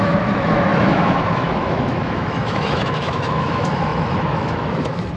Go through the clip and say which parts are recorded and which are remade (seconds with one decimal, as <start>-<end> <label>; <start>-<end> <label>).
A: 0.0-5.2 remade